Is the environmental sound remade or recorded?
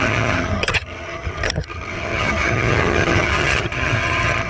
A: remade